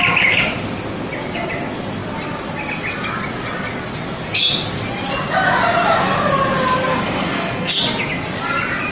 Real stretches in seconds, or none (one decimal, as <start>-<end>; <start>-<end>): 0.0-6.9; 7.8-8.9